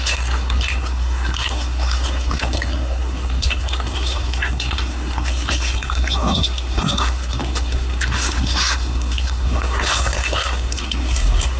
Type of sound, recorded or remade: remade